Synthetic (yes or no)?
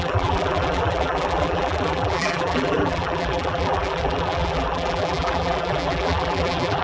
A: yes